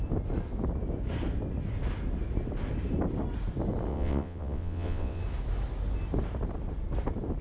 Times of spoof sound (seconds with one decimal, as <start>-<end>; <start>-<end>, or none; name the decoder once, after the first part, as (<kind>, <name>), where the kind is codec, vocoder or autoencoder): 3.9-5.2 (vocoder, WaveNeXt)